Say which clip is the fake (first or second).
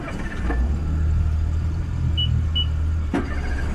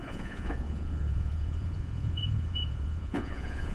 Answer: second